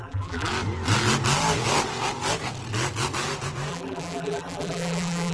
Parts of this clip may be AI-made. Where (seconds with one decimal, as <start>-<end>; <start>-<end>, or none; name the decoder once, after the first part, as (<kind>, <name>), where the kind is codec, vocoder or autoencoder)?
0.0-0.5 (vocoder, BigVGAN v2); 3.7-5.3